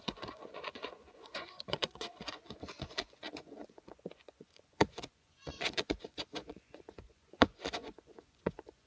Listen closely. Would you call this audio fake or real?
fake